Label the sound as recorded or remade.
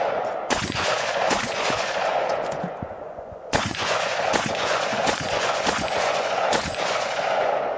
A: remade